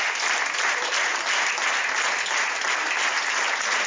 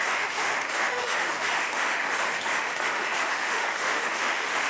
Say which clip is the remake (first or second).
second